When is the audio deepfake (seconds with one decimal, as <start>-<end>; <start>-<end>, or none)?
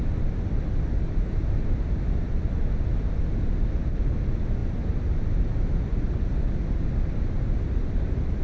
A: none